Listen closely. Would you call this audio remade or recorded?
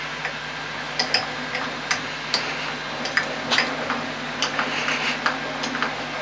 recorded